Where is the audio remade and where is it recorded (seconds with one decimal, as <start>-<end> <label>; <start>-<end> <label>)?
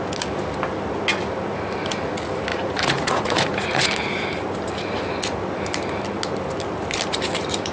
0.0-2.5 recorded; 2.5-3.8 remade; 3.8-7.7 recorded